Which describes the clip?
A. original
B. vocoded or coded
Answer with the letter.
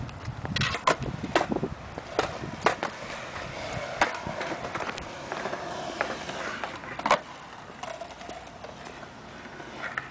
A